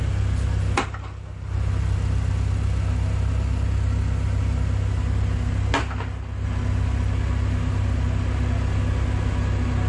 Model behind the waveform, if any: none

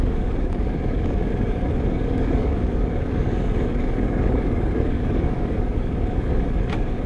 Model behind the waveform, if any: codec, DAC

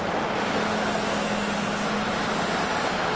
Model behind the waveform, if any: none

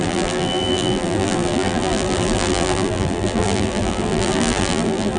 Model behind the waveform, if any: vocoder, BigVGAN v2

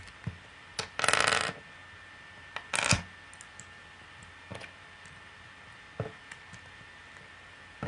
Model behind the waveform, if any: none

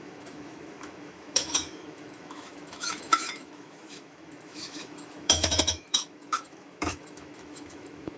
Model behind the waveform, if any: autoencoder, DAC-VAE